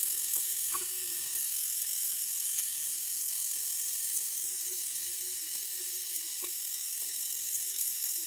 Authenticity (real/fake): fake